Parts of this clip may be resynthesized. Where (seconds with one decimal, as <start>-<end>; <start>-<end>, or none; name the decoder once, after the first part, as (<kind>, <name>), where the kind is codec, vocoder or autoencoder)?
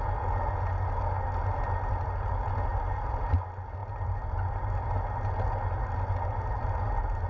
2.7-3.3 (vocoder, BigVGAN v2)